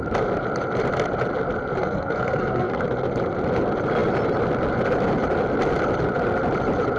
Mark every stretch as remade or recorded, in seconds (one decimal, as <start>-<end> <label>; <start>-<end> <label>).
0.0-1.8 recorded; 1.8-2.8 remade; 2.8-7.0 recorded

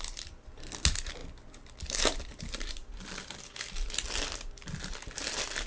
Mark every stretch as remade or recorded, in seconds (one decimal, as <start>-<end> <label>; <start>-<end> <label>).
0.0-5.7 recorded